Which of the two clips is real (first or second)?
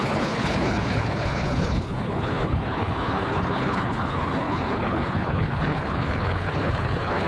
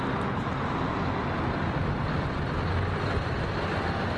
second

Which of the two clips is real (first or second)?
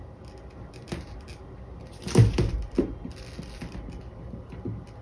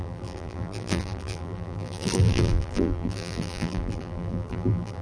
first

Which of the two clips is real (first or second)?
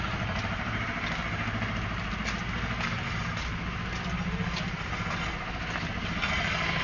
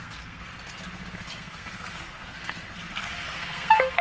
first